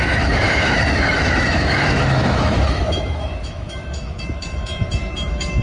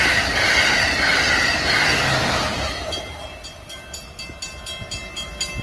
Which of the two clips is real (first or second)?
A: second